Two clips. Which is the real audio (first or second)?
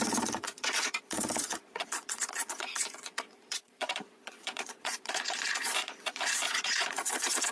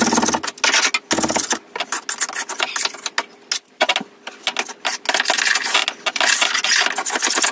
second